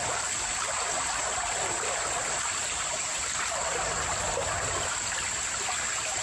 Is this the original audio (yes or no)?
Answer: yes